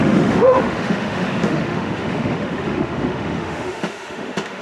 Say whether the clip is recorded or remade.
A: remade